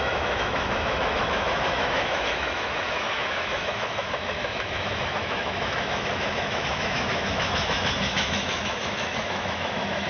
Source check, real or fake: fake